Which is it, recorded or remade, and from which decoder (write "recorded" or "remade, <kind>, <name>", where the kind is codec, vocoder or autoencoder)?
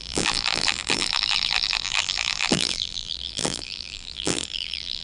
remade, vocoder, BigVGAN v2